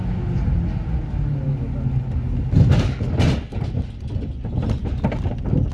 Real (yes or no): yes